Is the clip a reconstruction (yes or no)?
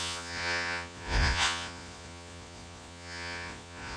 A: yes